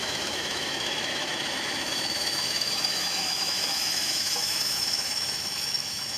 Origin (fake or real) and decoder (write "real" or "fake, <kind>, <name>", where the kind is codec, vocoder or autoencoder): fake, autoencoder, DAC-VAE